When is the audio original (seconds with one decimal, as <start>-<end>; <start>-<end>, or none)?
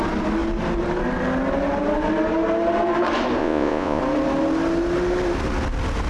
0.0-3.4; 4.0-6.1